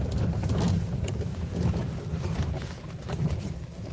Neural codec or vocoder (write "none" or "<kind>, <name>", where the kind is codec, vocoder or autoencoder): none